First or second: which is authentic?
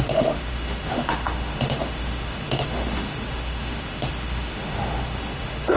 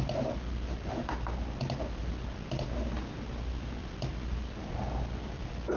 second